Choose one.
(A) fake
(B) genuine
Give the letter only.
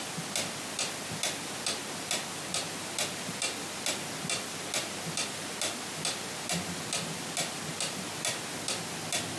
B